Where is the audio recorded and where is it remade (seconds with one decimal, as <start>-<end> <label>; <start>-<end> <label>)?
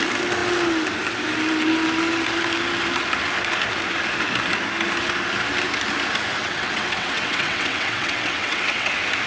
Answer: 0.0-6.4 recorded; 6.4-8.9 remade; 8.9-9.3 recorded